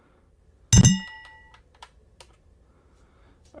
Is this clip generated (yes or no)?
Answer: no